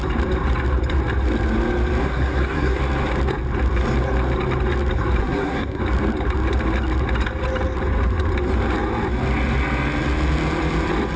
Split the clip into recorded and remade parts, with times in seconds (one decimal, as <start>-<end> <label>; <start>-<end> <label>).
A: 0.0-2.0 recorded; 2.0-2.8 remade; 2.8-5.2 recorded; 5.2-5.8 remade; 5.8-11.2 recorded